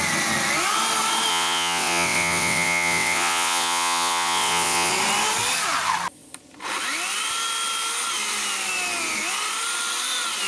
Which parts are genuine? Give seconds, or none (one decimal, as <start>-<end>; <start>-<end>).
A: 0.0-1.3; 4.9-10.5